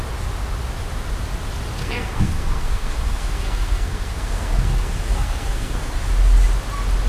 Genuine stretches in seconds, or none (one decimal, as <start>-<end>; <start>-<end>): 0.0-1.8; 5.9-7.1